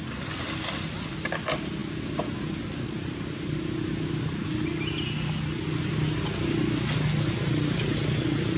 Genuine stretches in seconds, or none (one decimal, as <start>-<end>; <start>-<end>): 0.0-8.6